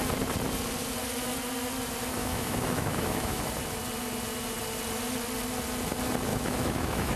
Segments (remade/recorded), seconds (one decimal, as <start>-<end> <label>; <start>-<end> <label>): 0.0-2.2 recorded; 2.2-3.4 remade; 3.4-6.3 recorded; 6.3-7.2 remade